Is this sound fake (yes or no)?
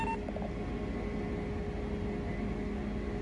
no